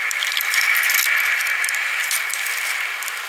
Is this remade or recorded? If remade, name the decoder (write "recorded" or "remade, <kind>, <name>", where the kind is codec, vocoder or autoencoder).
recorded